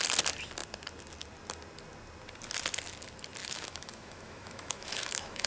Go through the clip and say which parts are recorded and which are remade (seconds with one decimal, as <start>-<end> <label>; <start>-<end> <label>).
0.0-3.4 recorded; 3.4-5.5 remade